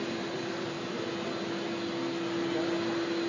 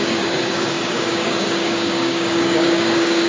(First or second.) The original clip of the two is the first